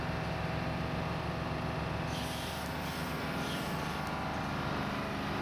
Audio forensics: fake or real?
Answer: real